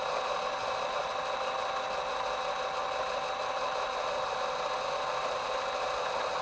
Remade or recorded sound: recorded